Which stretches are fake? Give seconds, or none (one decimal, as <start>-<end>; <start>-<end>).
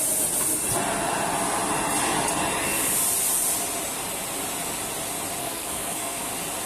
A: 5.4-6.3